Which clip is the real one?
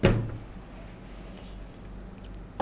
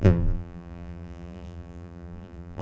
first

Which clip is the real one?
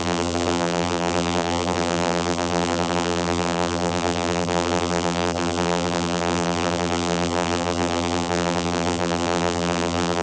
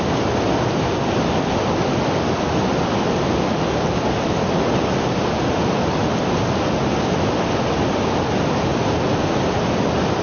second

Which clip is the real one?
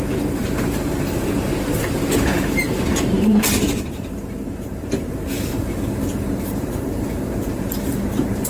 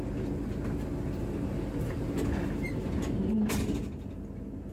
second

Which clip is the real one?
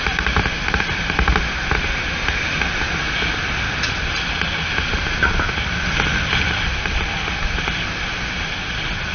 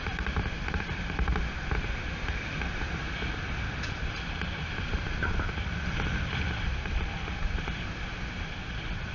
first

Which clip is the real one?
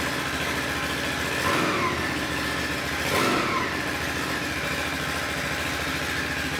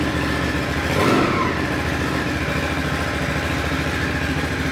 first